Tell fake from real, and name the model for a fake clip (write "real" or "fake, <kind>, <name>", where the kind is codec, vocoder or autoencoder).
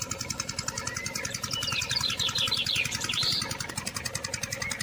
fake, vocoder, BigVGAN v2